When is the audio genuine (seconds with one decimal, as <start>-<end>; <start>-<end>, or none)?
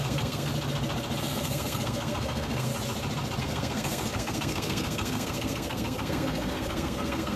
0.5-1.2; 2.7-3.4